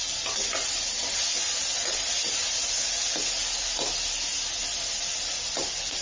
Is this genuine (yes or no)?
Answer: yes